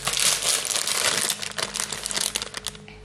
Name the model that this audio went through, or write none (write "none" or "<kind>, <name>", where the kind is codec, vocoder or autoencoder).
none